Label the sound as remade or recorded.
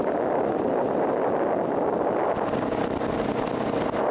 recorded